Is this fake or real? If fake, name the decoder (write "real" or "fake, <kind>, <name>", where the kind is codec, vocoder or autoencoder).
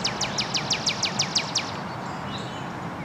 real